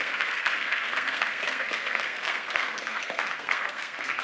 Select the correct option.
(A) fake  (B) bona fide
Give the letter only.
A